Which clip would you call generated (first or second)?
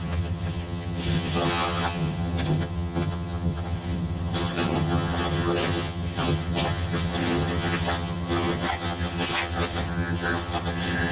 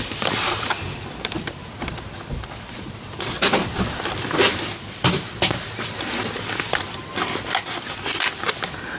first